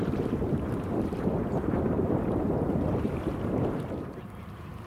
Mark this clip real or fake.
fake